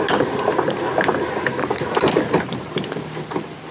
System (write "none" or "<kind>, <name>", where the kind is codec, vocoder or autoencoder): none